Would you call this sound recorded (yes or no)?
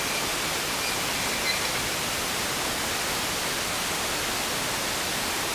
yes